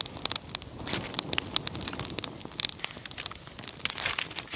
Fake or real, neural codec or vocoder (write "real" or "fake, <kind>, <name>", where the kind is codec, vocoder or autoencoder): real